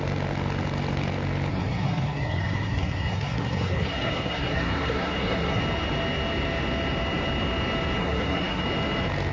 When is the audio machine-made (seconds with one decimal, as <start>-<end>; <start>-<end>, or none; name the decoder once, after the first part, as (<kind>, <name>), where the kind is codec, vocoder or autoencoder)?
1.5-5.6 (codec, SNAC); 8.0-8.6